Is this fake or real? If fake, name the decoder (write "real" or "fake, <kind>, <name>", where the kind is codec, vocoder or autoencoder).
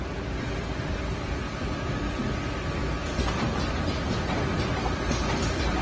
real